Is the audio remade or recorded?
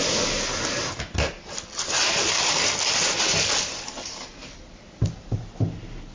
recorded